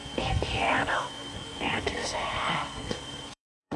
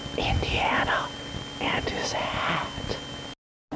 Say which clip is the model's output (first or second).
first